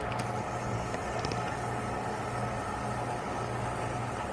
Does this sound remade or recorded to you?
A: recorded